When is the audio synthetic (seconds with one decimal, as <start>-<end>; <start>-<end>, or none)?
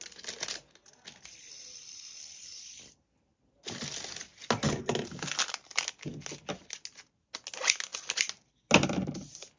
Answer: none